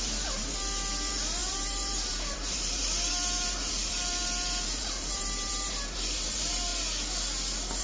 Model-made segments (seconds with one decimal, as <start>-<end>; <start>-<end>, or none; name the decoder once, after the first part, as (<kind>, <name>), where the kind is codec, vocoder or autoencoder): 0.0-6.7 (vocoder, BigVGAN v2)